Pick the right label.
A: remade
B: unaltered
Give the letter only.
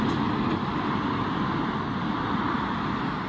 B